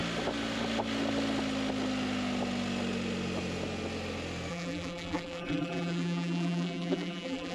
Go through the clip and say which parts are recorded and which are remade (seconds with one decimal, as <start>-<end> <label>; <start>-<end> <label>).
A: 0.0-4.5 recorded; 4.5-7.5 remade